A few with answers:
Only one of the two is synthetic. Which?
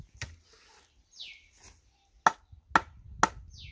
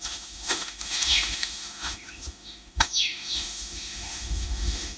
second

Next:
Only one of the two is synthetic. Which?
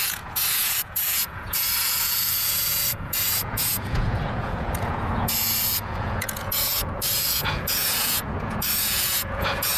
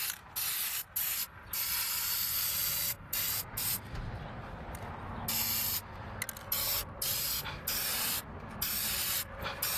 first